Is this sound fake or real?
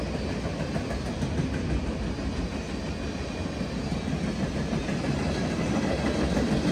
real